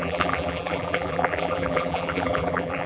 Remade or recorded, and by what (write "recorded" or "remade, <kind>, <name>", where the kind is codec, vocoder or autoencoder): remade, vocoder, BigVGAN v2